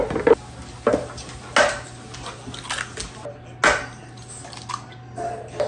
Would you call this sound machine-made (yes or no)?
no